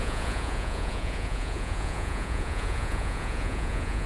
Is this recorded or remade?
remade